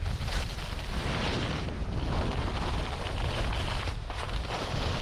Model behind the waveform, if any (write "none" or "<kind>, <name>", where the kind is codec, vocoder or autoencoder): none